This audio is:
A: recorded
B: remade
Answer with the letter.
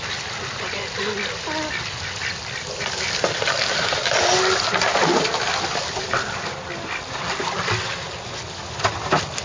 A